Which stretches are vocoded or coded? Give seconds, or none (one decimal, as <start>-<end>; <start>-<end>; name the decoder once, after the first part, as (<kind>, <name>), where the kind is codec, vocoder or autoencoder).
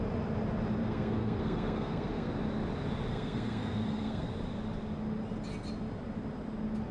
0.8-2.3 (codec, SNAC); 3.1-4.3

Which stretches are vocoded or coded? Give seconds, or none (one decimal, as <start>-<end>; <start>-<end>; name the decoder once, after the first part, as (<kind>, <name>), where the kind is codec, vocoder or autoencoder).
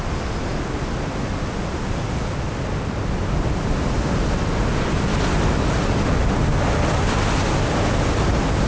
none